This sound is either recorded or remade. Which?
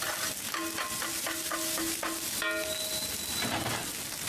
recorded